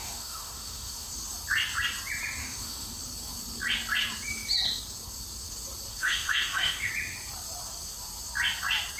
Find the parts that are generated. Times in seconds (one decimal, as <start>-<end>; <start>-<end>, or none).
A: 0.0-1.1; 2.4-3.0; 5.9-6.9